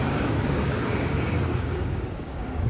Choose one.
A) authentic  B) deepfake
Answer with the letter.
B